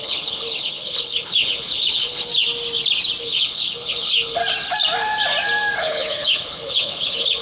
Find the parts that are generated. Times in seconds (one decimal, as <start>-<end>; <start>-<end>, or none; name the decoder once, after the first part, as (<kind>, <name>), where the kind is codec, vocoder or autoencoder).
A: 0.0-2.3 (codec, HILCodec); 3.2-4.4; 5.8-7.4